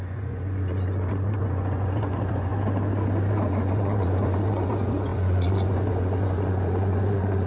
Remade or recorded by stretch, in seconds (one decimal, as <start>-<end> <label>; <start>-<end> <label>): 0.0-2.5 remade; 2.5-3.3 recorded; 3.3-7.5 remade